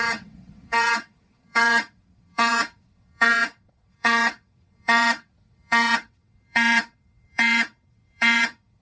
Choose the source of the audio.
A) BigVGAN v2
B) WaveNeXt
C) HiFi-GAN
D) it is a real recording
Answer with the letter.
B